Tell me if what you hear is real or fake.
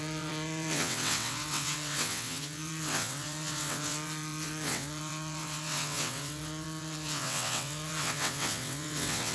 fake